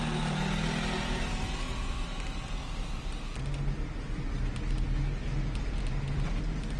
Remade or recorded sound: recorded